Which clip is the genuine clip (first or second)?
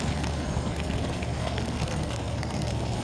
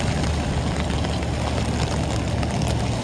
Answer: second